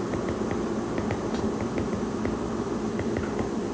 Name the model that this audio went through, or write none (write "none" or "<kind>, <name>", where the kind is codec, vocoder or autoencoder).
none